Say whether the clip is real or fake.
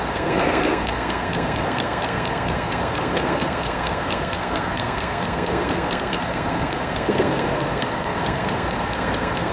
fake